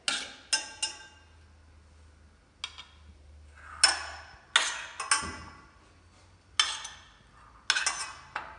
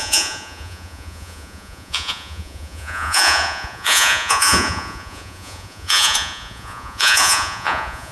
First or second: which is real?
first